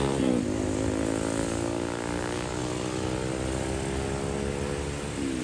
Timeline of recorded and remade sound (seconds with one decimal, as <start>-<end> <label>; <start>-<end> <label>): 0.0-1.4 recorded; 1.4-2.6 remade; 2.6-5.4 recorded